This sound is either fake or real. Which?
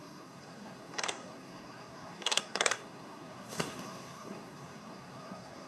fake